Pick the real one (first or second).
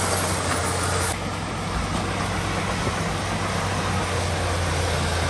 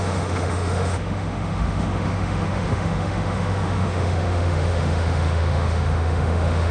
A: first